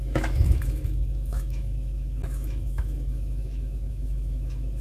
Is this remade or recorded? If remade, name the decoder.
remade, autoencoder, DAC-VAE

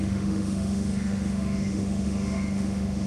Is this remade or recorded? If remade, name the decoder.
remade, autoencoder, DAC-VAE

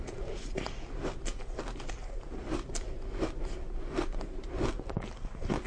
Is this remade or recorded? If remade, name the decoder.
recorded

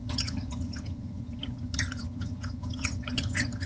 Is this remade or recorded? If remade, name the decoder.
remade, vocoder, HiFi-GAN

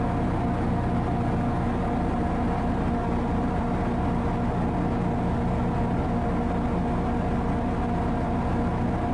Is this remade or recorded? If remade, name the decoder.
recorded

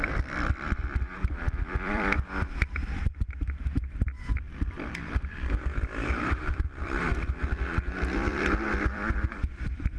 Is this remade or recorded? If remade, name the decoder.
remade, vocoder, BigVGAN v2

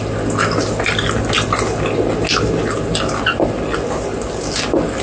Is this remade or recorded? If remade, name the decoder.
recorded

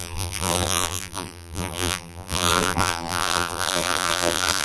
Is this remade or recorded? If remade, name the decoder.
remade, vocoder, BigVGAN v2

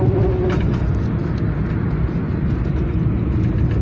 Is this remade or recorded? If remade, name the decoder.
recorded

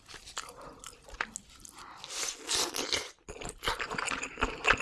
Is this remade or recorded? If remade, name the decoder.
recorded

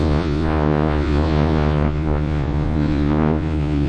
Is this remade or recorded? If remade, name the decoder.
remade, vocoder, Vocos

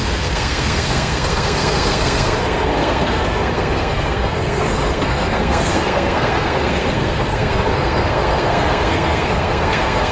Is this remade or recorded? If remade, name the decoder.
remade, codec, SNAC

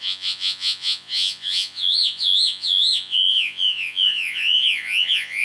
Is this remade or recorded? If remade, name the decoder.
remade, vocoder, Vocos